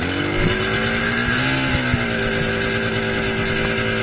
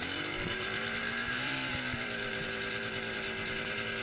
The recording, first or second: first